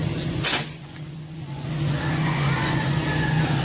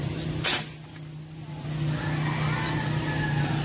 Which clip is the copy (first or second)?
first